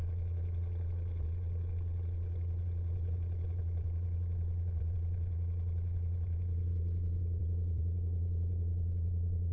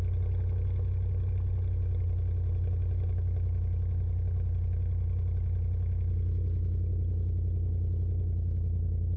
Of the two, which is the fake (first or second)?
first